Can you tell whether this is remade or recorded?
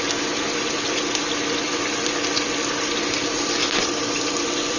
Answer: recorded